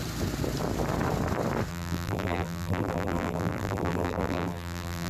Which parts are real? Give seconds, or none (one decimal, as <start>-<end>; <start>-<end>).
0.0-1.7